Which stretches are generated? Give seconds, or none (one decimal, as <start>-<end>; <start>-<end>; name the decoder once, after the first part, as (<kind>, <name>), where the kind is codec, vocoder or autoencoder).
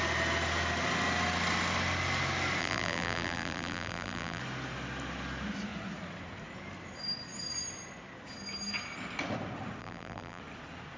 2.6-4.4 (vocoder, BigVGAN v2); 9.8-10.4